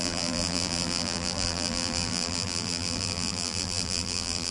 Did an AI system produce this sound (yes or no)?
yes